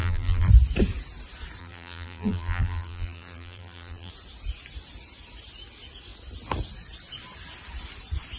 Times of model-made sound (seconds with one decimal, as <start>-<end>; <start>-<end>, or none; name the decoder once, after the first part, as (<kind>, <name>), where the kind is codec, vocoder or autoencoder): 0.0-0.5 (vocoder, BigVGAN v2); 1.6-4.1